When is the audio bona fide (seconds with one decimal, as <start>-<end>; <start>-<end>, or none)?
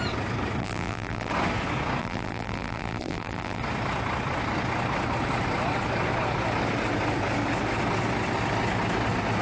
0.0-0.6; 1.3-2.0; 3.6-9.4